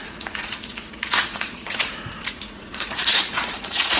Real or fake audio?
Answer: fake